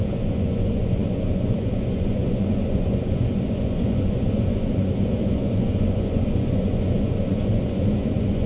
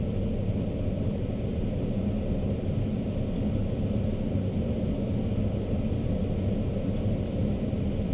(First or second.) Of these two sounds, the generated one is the first